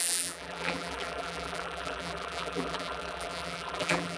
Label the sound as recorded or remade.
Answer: remade